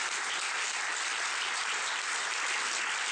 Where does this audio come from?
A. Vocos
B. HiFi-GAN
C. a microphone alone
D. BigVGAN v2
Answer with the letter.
C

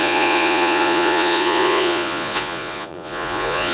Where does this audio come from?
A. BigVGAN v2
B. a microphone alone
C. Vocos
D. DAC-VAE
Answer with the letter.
C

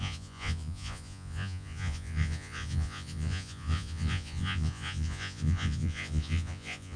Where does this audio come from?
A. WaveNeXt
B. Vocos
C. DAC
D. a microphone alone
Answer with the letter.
B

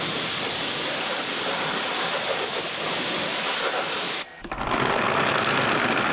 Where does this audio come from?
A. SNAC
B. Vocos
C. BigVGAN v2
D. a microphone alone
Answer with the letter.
D